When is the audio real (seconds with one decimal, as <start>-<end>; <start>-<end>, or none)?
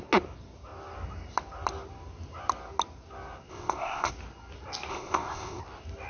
0.0-3.5; 4.1-4.9; 5.6-6.1